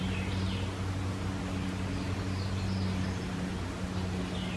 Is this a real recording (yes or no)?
yes